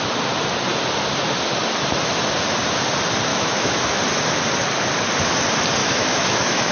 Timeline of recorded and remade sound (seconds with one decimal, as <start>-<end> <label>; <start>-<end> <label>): 0.0-3.3 recorded; 3.3-4.0 remade; 4.0-5.8 recorded; 5.8-6.7 remade